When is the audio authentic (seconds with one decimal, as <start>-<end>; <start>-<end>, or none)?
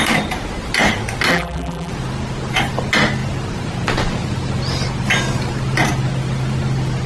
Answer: 0.0-1.3; 1.9-7.1